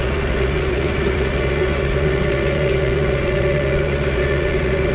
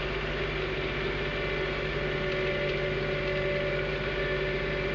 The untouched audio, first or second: second